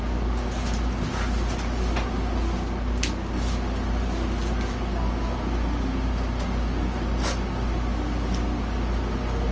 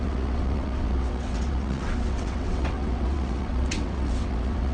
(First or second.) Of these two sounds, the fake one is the second